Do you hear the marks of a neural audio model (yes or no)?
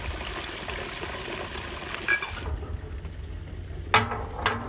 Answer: no